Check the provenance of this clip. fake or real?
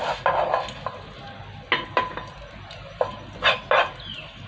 real